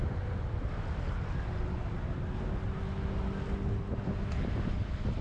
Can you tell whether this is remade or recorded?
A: recorded